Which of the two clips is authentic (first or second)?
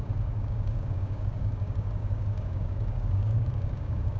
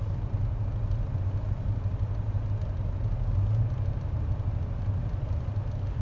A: second